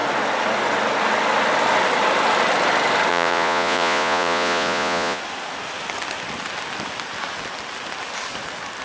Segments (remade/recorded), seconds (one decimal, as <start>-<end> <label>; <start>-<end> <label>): 0.0-3.1 recorded; 3.1-5.2 remade; 5.2-8.8 recorded